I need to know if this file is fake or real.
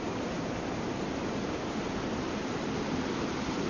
real